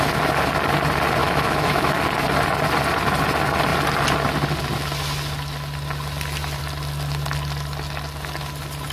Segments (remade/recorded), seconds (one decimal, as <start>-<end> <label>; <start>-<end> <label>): 0.0-1.2 recorded; 1.2-2.0 remade; 2.0-8.9 recorded